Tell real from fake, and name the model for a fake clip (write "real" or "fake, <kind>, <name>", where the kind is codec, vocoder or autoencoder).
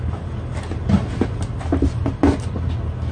real